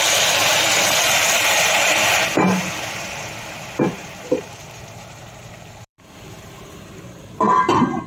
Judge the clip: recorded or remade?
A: remade